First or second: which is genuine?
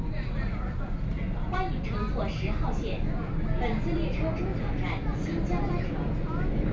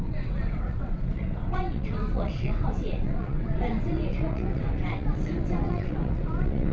first